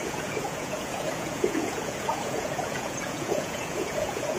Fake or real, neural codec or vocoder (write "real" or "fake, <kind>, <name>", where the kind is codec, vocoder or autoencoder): fake, vocoder, Vocos